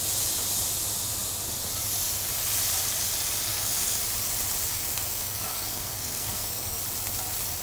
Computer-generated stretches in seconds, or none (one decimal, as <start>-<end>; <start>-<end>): 3.5-4.0; 4.7-6.8